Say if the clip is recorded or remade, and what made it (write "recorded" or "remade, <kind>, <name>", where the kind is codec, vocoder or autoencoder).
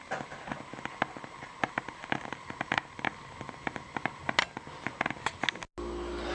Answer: recorded